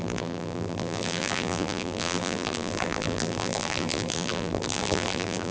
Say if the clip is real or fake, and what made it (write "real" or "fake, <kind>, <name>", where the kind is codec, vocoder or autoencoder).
fake, vocoder, BigVGAN v2